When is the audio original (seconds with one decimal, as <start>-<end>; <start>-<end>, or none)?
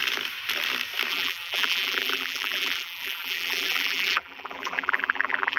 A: 0.0-1.1